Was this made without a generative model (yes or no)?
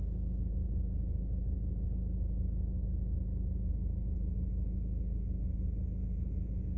yes